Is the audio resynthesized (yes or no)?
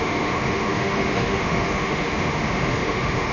yes